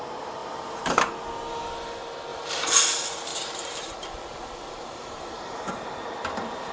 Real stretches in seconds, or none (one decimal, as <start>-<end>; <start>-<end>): 0.0-0.4; 1.1-2.3; 2.8-3.3